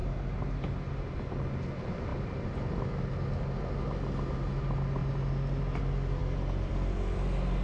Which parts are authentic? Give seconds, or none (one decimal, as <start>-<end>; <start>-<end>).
0.0-7.6